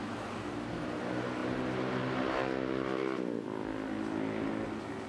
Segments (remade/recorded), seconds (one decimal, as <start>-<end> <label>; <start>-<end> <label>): 0.0-5.1 recorded